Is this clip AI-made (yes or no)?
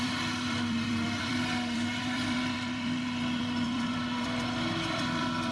yes